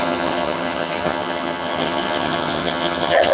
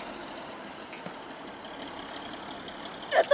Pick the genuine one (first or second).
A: second